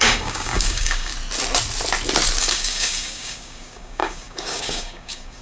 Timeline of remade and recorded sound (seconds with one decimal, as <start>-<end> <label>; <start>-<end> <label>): 0.0-1.1 remade; 1.1-2.4 recorded; 2.4-5.4 remade